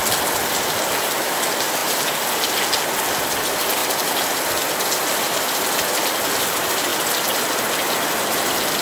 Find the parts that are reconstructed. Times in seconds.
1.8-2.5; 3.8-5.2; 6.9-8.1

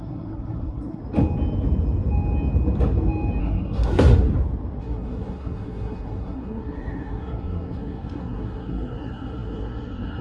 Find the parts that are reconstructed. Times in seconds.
0.0-1.0; 3.4-4.3; 4.8-10.2

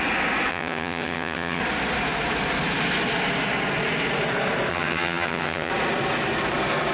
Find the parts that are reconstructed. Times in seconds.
0.5-1.6; 4.7-5.7

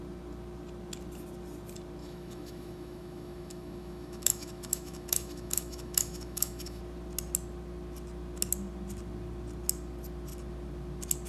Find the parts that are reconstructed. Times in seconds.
2.0-6.8

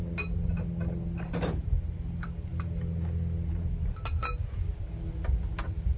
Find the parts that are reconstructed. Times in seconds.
none

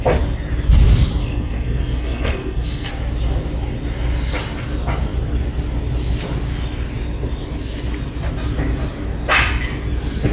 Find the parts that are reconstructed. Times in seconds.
1.2-2.9